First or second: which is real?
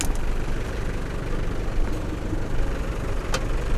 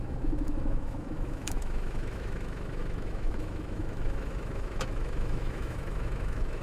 first